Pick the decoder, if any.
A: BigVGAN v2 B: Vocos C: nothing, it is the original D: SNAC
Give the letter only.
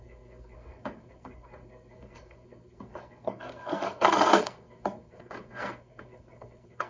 D